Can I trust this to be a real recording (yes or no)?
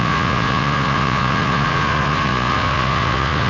no